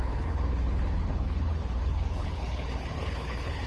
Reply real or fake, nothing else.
fake